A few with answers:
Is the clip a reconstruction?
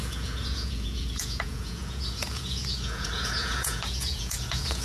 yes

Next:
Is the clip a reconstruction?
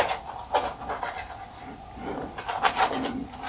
no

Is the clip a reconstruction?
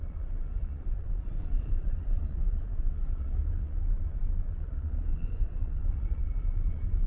yes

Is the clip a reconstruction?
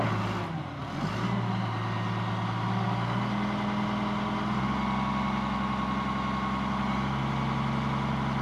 no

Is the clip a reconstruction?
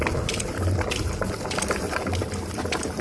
no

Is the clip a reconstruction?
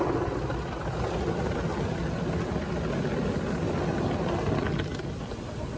no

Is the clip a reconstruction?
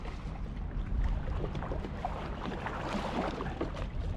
yes